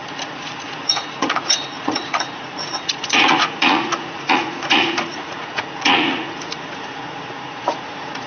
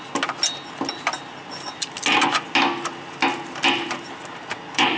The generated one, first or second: first